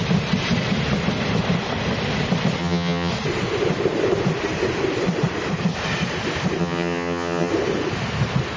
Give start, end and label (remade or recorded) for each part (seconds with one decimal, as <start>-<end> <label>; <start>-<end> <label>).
0.0-2.6 recorded; 2.6-3.1 remade; 3.1-6.6 recorded; 6.6-7.5 remade; 7.5-8.6 recorded